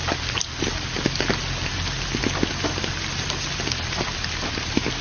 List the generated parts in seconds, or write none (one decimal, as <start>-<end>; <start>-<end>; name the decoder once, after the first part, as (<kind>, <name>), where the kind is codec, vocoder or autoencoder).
none